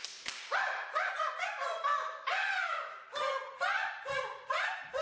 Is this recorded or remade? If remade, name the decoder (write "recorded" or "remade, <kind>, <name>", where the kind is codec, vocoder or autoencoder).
remade, vocoder, BigVGAN v2